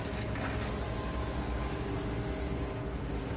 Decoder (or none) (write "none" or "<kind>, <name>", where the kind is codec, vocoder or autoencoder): none